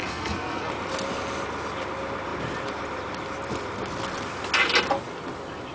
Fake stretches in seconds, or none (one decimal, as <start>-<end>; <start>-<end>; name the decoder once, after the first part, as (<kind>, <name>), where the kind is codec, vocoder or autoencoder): 0.0-0.7 (codec, SNAC)